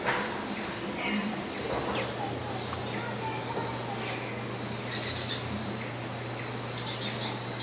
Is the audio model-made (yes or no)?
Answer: no